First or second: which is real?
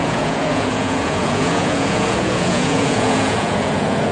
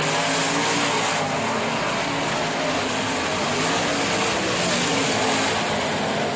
second